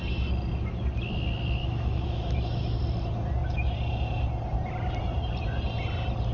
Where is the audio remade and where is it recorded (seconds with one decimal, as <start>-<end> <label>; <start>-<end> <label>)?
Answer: 0.0-1.6 recorded; 1.6-2.8 remade; 2.8-6.3 recorded